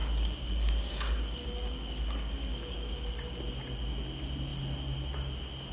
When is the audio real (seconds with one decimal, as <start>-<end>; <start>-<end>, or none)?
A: 3.4-5.7